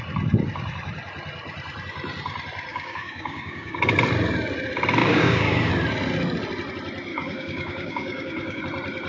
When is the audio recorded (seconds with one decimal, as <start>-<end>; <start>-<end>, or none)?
0.0-2.7; 3.8-5.0; 5.7-7.1; 8.6-9.1